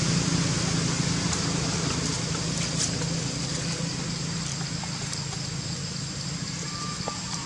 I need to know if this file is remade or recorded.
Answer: recorded